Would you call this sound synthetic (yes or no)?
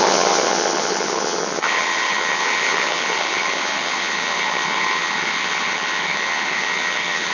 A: yes